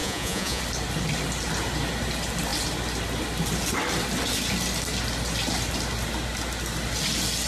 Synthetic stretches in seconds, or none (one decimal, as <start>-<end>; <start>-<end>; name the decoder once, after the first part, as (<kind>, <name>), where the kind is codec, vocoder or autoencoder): 0.0-0.6 (vocoder, Vocos)